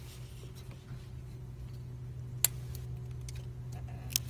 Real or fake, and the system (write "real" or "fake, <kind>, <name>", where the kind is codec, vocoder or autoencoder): real